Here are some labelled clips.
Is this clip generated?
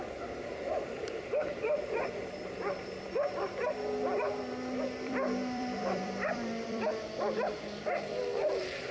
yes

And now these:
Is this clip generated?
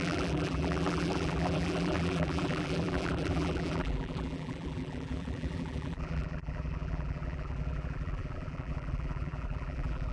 yes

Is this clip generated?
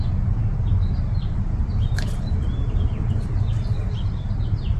yes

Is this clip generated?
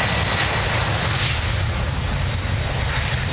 no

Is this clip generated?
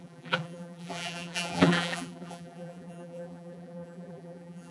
yes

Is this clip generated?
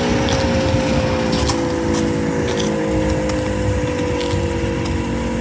no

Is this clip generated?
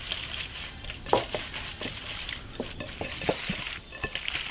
yes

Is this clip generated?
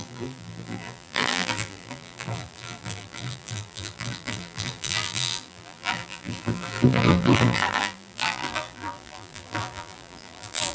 yes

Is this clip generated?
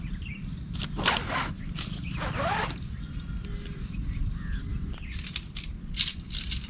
no